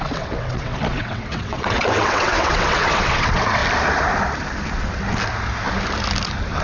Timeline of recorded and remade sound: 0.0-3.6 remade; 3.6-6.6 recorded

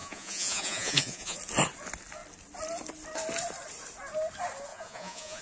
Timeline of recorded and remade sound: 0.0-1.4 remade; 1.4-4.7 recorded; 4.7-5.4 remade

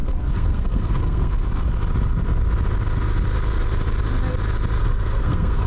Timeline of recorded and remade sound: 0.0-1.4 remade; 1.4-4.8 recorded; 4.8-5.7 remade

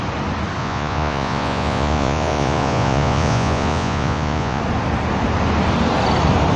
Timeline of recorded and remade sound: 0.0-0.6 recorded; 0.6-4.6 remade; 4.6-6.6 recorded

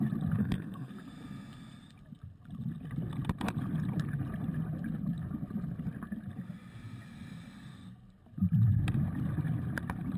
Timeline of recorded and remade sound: 0.0-0.4 recorded; 0.4-0.9 remade; 0.9-10.2 recorded

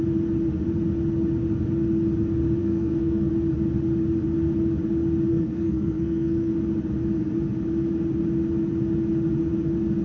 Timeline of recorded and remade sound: 0.0-2.6 recorded; 2.6-3.3 remade; 3.3-5.3 recorded; 5.3-6.5 remade; 6.5-10.0 recorded

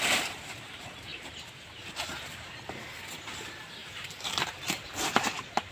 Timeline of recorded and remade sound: 0.0-1.1 recorded; 1.1-2.6 remade; 2.6-3.8 recorded; 3.8-4.6 remade; 4.6-5.7 recorded

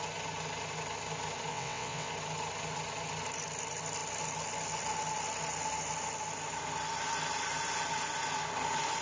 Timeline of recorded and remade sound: 0.0-1.5 recorded; 1.5-2.1 remade; 2.1-9.0 recorded